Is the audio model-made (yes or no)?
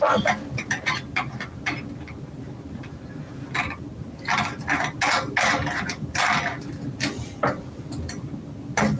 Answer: no